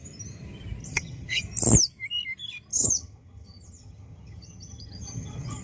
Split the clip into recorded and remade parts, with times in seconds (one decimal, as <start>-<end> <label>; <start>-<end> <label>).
0.0-0.8 recorded; 0.8-1.4 remade; 1.4-2.7 recorded; 2.7-5.6 remade